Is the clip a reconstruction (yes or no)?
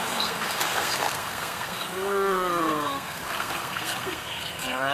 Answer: yes